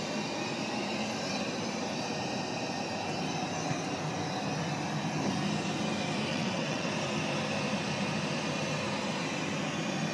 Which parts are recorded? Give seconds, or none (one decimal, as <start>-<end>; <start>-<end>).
0.0-6.3; 6.9-10.1

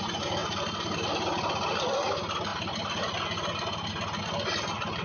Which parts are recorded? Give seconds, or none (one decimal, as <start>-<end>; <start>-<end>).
0.0-5.0

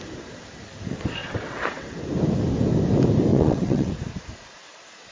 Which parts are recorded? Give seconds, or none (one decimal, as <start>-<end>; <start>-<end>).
0.0-1.2; 1.9-3.3; 3.9-5.1

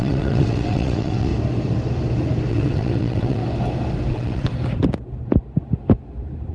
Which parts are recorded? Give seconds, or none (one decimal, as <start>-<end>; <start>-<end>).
1.3-2.5; 3.4-4.1; 4.5-6.5

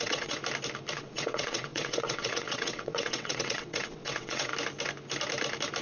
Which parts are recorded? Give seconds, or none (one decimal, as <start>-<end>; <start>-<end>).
0.4-0.9; 4.5-5.8

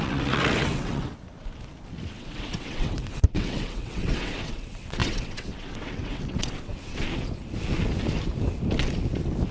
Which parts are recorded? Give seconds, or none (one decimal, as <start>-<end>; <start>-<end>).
1.1-2.1; 6.7-9.5

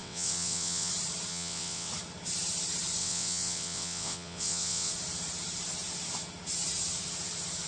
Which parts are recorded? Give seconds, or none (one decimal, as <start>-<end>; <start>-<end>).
0.9-1.3; 1.9-3.0; 4.9-7.7